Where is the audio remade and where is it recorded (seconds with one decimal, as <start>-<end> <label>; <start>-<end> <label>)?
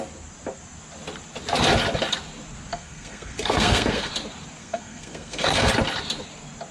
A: 0.0-2.7 recorded; 2.7-4.1 remade; 4.1-4.6 recorded; 4.6-5.7 remade; 5.7-6.7 recorded